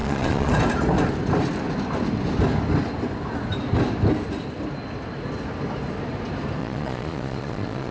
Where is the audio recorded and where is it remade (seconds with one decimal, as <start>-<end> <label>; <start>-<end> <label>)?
0.0-0.5 remade; 0.5-6.6 recorded; 6.6-7.9 remade